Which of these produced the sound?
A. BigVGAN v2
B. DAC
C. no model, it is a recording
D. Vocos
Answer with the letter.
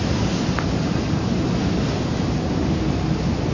C